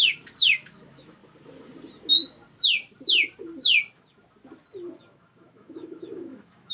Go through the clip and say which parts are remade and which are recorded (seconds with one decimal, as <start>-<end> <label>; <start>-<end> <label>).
0.0-1.2 remade; 1.2-5.0 recorded; 5.0-6.7 remade

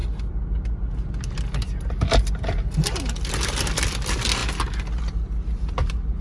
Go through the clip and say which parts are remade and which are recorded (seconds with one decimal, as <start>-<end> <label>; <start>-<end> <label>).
0.0-6.2 recorded

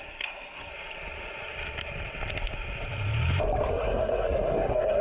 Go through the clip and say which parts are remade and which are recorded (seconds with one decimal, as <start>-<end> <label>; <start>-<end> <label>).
0.0-0.7 remade; 0.7-3.7 recorded; 3.7-5.0 remade

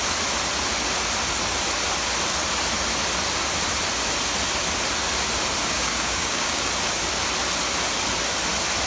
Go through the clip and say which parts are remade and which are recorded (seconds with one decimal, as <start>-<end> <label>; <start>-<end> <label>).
0.0-5.6 recorded; 5.6-6.7 remade; 6.7-8.9 recorded